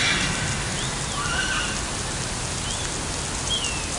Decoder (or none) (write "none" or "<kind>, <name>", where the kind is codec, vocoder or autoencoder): none